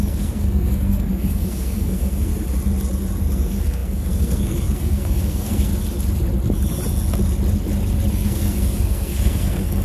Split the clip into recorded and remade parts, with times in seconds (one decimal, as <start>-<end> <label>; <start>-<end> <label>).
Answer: 0.0-2.3 remade; 2.3-3.3 recorded; 3.3-5.7 remade; 5.7-8.1 recorded; 8.1-9.8 remade